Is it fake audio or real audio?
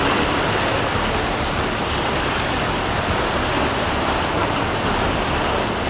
real